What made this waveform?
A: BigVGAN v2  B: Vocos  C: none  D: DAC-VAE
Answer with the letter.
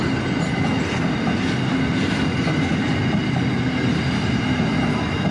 C